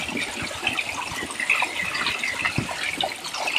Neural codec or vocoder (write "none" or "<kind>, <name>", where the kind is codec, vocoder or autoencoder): none